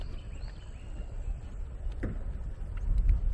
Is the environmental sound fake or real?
real